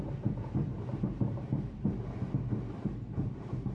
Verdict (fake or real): fake